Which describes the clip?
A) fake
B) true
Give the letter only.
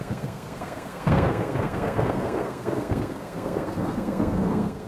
A